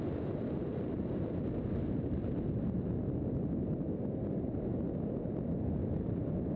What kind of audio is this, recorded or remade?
recorded